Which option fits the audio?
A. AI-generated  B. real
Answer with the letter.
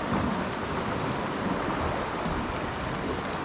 B